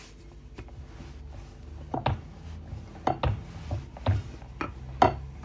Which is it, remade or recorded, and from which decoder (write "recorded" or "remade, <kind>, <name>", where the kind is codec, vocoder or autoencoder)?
recorded